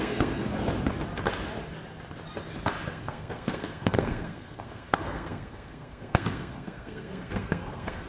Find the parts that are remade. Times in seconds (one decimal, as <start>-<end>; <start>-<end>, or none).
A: 0.0-0.4; 2.9-8.1